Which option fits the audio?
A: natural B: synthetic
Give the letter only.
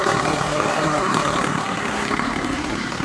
B